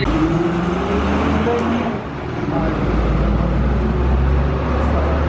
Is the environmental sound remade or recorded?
recorded